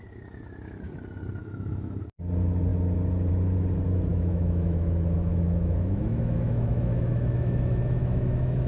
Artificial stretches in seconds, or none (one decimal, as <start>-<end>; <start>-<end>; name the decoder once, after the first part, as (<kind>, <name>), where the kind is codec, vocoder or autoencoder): 1.4-2.0 (autoencoder, DAC-VAE); 4.1-8.7